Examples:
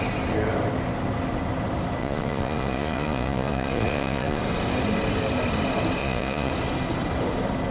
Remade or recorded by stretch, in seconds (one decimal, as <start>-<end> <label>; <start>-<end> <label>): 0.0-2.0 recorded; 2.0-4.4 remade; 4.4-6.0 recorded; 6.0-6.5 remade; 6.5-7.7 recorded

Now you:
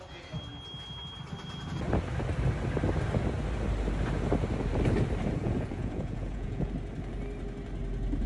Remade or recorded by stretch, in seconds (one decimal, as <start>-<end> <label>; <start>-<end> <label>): 0.0-5.4 recorded; 5.4-6.7 remade; 6.7-8.3 recorded

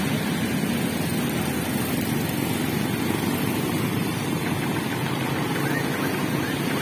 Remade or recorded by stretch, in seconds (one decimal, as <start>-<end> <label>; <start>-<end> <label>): 0.0-3.9 recorded; 3.9-4.4 remade; 4.4-6.8 recorded